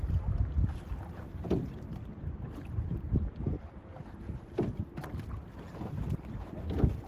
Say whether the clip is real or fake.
real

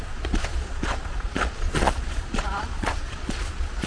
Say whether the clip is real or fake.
fake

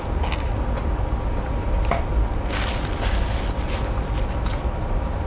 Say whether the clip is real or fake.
real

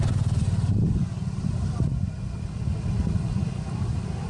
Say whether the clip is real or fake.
real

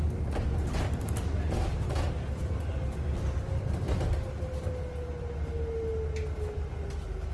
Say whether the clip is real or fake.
real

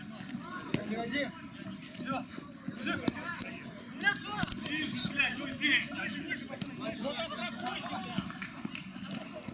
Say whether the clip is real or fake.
real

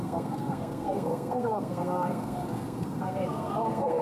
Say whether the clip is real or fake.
fake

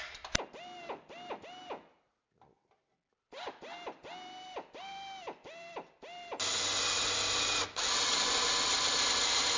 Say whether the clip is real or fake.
real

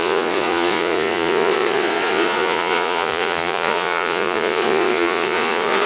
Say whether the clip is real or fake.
fake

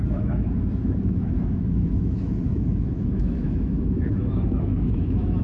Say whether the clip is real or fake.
fake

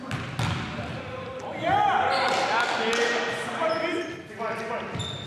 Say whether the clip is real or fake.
real